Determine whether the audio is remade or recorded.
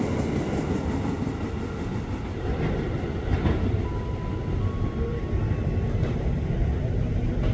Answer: recorded